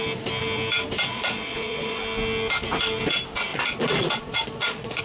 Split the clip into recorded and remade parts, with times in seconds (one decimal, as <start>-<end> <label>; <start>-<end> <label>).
0.0-1.1 recorded; 1.1-2.0 remade; 2.0-3.5 recorded; 3.5-5.0 remade